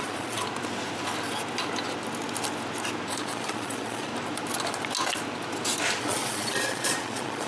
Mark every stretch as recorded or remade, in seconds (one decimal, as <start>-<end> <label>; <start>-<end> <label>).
0.0-0.4 remade; 0.4-3.1 recorded; 3.1-4.1 remade; 4.1-6.0 recorded; 6.0-7.5 remade